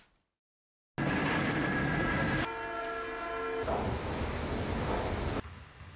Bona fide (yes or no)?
yes